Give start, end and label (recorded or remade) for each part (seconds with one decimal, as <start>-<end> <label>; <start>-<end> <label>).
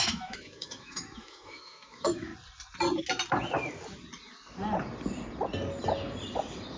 0.0-2.3 remade; 2.3-6.8 recorded